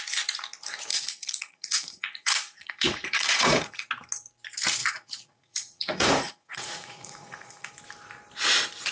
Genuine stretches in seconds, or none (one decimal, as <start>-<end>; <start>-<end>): 0.0-0.9; 3.9-4.8; 7.7-8.9